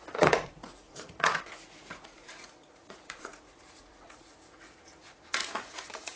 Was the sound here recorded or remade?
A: remade